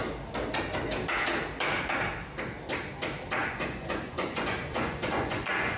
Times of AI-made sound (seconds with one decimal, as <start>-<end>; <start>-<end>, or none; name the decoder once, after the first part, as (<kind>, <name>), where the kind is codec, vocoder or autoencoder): 3.5-5.8 (vocoder, Vocos)